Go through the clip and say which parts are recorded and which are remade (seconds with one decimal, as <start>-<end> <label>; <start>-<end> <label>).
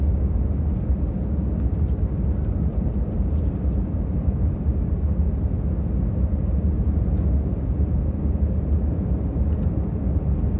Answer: 0.0-2.7 recorded; 2.7-4.7 remade; 4.7-10.6 recorded